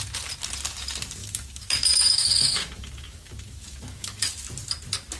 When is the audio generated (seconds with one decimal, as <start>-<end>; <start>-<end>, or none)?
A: 1.2-4.3